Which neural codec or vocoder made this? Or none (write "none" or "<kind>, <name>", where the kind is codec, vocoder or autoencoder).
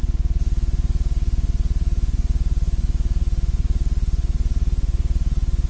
none